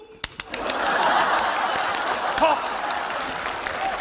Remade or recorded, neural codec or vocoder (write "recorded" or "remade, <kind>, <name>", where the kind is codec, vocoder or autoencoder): recorded